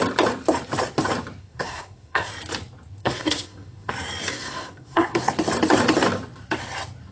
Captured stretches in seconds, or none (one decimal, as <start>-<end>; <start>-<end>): 0.0-1.4; 2.3-3.0; 3.9-4.3; 5.3-7.1

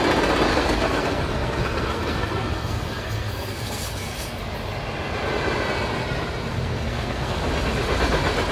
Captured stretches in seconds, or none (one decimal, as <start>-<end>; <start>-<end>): 0.0-0.5; 4.4-6.5; 7.4-8.5

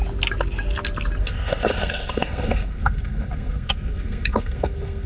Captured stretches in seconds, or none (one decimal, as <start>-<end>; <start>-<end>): 0.0-1.2

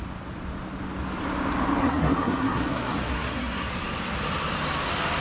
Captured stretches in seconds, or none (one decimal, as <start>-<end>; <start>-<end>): 0.0-1.8; 3.7-5.2

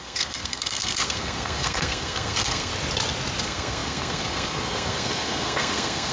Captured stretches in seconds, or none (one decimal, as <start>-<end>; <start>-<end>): 2.7-3.4

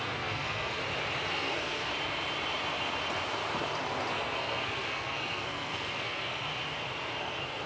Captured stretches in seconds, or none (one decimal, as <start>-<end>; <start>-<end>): 0.8-1.3; 1.9-4.1; 6.5-7.2

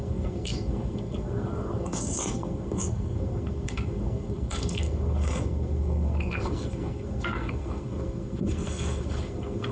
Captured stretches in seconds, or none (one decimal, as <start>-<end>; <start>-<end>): none